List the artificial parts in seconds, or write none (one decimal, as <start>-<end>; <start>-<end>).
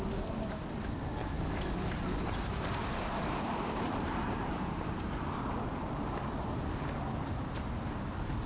1.2-5.9